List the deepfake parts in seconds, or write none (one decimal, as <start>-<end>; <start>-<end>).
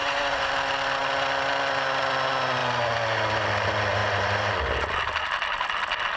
0.0-0.5